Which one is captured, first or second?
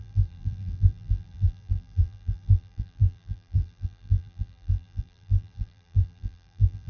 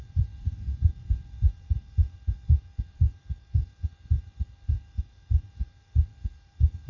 second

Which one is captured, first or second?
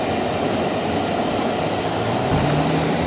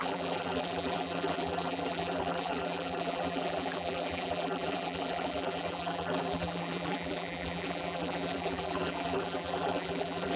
first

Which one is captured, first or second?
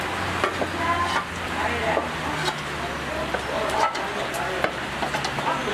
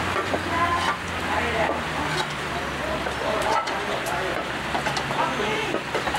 first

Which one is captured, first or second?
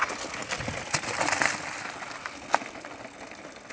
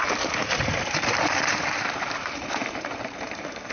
first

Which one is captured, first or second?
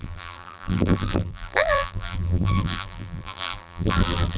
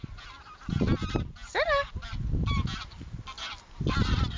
second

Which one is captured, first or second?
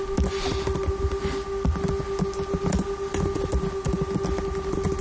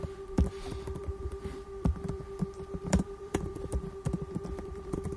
first